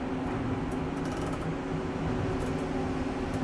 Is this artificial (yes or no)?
no